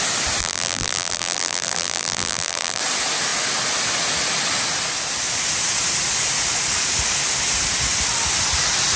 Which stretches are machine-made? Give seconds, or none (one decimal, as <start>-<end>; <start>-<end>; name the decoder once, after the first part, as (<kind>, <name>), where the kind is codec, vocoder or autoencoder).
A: 0.4-2.8 (vocoder, BigVGAN v2)